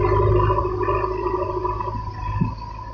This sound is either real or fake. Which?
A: real